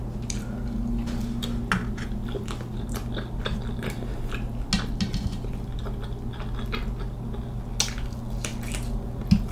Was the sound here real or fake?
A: real